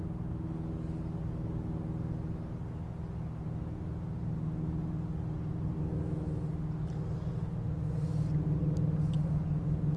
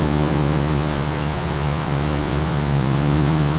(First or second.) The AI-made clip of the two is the second